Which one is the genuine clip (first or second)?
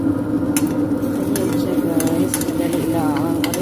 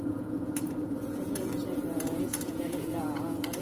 first